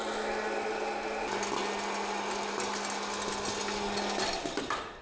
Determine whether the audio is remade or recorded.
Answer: recorded